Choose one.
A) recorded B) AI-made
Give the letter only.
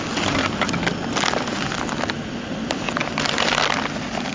A